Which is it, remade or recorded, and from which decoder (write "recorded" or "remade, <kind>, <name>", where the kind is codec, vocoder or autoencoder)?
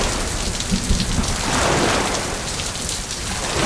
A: recorded